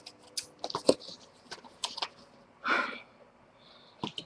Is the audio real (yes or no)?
yes